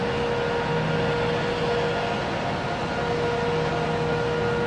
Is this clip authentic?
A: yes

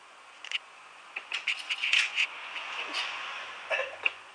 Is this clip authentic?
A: no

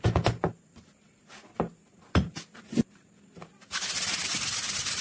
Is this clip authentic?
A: yes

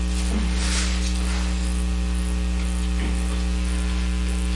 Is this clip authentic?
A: yes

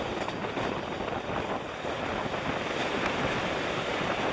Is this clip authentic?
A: yes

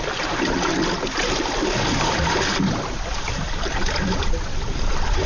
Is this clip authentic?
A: yes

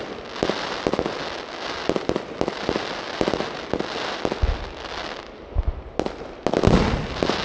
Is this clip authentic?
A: yes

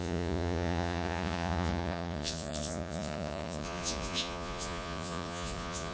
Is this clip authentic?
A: no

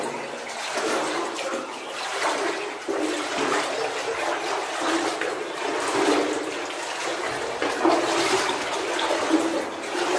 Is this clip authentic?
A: yes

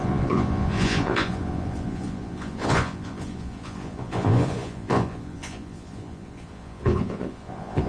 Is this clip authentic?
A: no